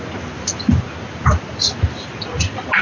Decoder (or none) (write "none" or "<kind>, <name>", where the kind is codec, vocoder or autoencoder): none